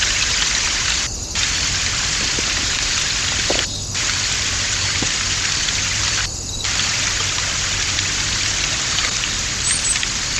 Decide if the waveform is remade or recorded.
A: remade